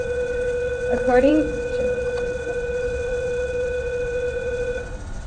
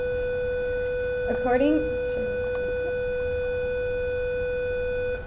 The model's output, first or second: first